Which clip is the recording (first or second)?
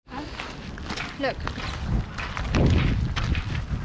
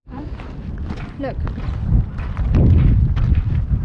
first